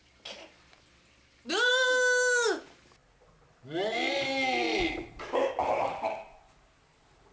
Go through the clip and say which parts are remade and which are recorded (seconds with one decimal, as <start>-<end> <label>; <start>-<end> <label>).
0.0-7.3 recorded